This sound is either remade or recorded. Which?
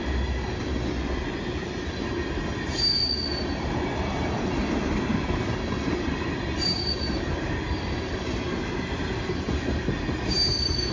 recorded